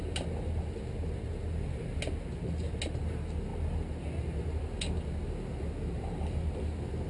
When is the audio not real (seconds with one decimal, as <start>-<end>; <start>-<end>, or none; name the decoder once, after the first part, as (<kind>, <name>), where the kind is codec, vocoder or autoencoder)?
none